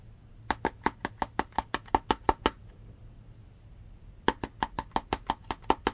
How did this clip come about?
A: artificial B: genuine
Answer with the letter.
B